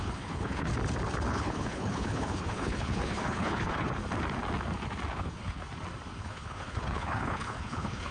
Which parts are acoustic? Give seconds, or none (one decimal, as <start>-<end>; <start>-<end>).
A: 0.7-1.3; 4.0-5.1; 5.6-6.2